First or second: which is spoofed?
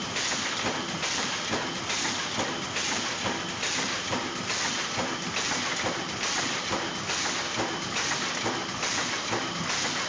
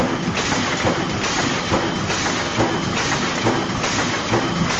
first